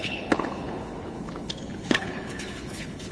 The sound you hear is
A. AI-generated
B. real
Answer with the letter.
A